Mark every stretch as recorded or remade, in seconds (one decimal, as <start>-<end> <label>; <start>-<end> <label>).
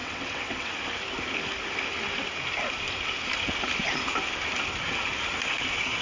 0.0-0.7 remade; 0.7-6.0 recorded